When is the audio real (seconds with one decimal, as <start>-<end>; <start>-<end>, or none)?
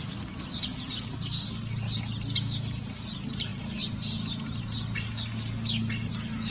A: 0.0-6.5